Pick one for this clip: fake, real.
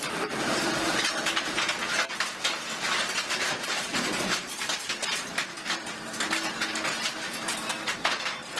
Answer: fake